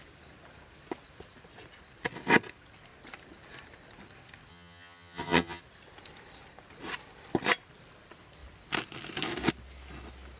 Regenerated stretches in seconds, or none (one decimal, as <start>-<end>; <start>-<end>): 4.5-5.6